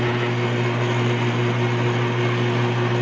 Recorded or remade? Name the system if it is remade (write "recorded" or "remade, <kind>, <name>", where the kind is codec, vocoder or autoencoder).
recorded